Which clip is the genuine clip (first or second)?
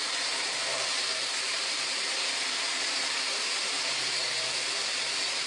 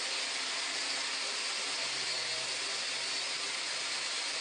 second